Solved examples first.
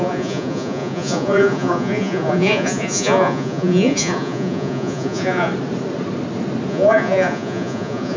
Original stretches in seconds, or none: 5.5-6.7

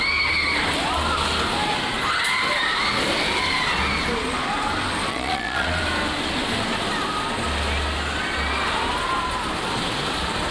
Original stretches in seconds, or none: 0.0-5.1; 5.8-10.5

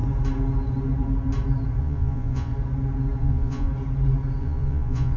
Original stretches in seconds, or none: 0.0-1.8; 2.5-3.2; 3.7-4.4

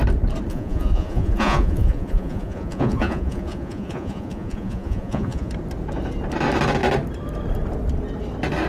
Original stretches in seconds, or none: 0.0-0.5; 5.5-8.7

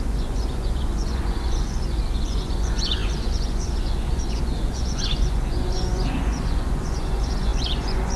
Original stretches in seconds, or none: none

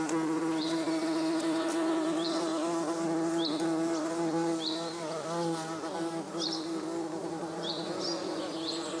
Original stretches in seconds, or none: 2.5-7.2

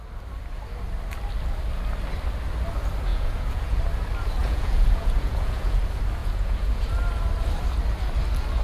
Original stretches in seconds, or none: 0.0-3.1; 3.8-4.4; 5.8-6.2; 6.9-8.6

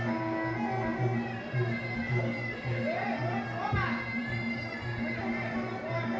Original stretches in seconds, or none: 0.0-6.2